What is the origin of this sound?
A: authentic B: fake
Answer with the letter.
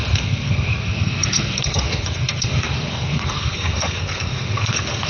B